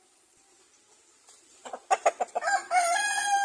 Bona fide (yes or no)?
yes